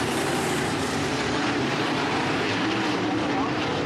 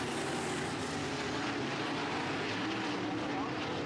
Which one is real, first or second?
second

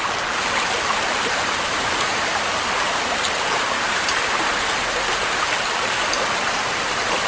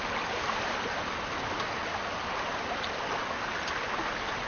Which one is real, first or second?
second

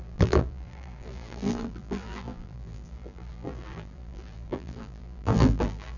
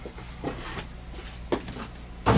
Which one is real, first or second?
second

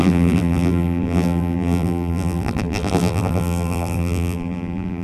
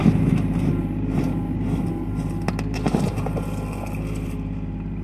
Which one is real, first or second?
second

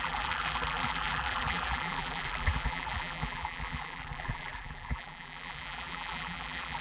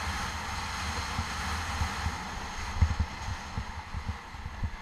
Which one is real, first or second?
second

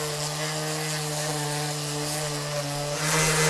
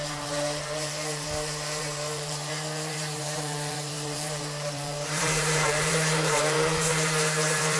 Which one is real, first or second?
first